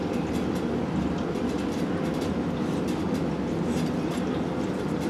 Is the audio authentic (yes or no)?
no